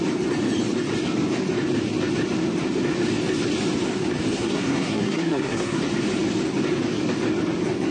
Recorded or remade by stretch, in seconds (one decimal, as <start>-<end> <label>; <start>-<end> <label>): 0.0-4.3 recorded; 4.3-5.8 remade; 5.8-7.9 recorded